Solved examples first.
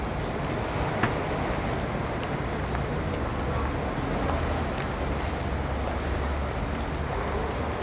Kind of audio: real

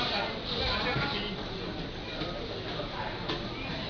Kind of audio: real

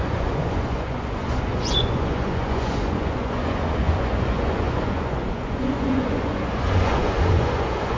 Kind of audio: fake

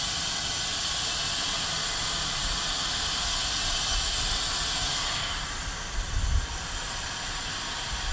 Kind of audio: real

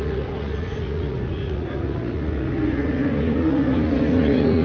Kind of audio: fake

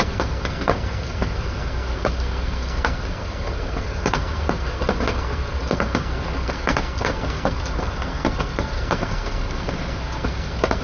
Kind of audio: fake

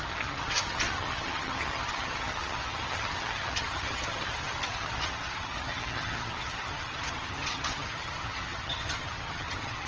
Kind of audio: fake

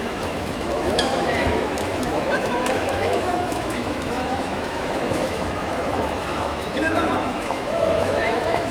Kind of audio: fake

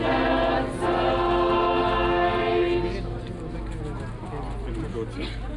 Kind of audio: real